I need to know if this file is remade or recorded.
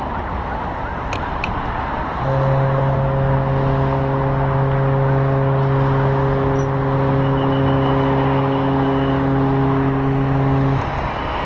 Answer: recorded